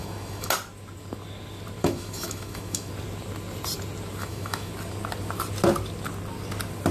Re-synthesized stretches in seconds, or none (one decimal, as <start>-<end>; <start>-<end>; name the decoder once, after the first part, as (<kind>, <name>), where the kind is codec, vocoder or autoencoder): 0.0-0.5 (autoencoder, DAC-VAE); 1.8-2.9; 4.2-4.7